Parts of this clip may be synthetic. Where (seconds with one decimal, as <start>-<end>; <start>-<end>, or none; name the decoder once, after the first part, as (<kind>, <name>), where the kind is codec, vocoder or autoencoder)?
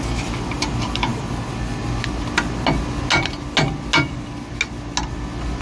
none